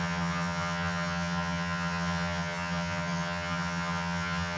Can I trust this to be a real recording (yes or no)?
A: no